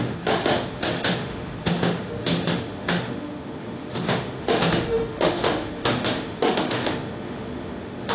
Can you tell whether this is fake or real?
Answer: fake